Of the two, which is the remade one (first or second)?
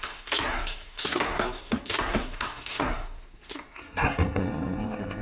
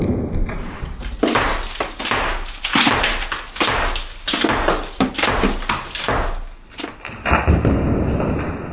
first